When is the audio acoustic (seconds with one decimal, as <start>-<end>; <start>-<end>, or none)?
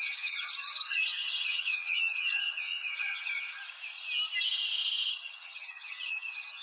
3.6-5.1